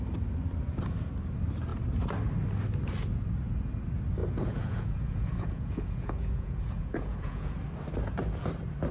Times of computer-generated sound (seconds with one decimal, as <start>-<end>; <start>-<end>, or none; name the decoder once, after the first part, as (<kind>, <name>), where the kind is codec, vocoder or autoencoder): 4.2-7.5 (vocoder, Vocos)